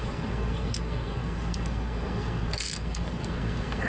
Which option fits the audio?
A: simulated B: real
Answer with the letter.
A